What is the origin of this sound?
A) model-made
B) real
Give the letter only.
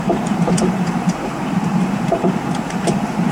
A